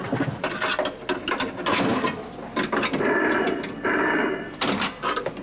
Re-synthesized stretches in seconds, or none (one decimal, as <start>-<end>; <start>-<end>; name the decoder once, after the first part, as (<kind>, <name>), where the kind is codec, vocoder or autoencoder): none